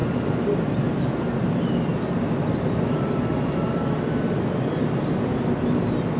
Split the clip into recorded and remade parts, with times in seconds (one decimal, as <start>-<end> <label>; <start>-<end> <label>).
0.0-6.2 recorded

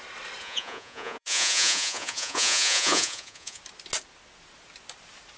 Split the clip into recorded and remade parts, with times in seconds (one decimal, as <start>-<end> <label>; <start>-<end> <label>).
0.0-0.4 recorded; 0.4-3.6 remade; 3.6-5.4 recorded

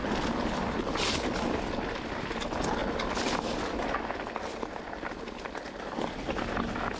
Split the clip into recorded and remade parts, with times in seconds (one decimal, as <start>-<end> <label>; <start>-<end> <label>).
0.0-7.0 recorded

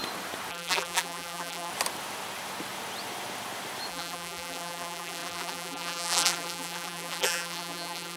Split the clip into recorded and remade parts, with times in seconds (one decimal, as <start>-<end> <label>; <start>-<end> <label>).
0.0-0.5 recorded; 0.5-1.7 remade; 1.7-3.9 recorded; 3.9-8.2 remade

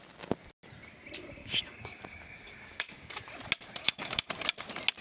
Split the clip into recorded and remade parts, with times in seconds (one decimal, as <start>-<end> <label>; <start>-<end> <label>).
0.0-1.4 recorded; 1.4-3.2 remade; 3.2-3.8 recorded; 3.8-4.3 remade; 4.3-5.0 recorded

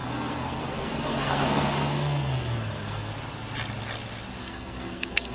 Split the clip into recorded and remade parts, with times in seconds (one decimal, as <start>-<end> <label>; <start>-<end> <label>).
0.0-3.1 remade; 3.1-4.4 recorded; 4.4-5.3 remade

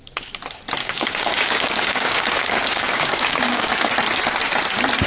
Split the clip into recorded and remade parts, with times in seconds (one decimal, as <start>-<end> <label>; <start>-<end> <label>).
0.0-0.8 recorded; 0.8-3.9 remade; 3.9-5.1 recorded